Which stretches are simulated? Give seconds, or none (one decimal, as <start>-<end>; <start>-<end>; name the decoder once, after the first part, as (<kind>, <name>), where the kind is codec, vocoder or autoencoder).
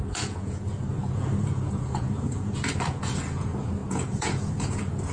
0.0-5.1 (vocoder, Vocos)